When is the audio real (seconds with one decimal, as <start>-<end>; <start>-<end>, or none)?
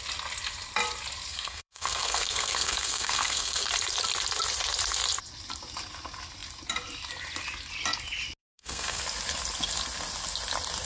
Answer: 0.0-1.3; 3.7-8.4; 9.0-10.9